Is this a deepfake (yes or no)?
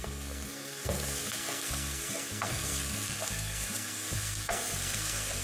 yes